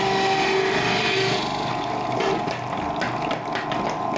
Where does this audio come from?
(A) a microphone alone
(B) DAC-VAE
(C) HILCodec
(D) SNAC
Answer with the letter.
A